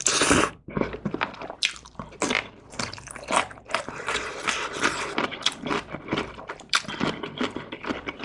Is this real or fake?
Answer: fake